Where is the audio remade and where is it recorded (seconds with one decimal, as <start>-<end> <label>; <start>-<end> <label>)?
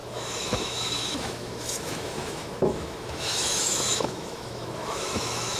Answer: 0.0-5.6 remade